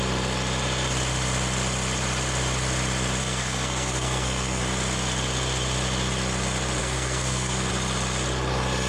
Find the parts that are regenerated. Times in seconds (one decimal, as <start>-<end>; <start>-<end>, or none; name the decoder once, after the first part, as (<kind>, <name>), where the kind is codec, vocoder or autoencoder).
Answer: 3.2-4.6 (codec, SNAC); 6.8-7.7